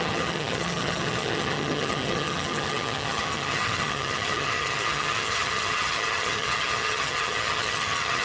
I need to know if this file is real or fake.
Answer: fake